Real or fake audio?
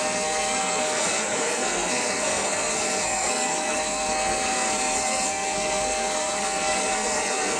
fake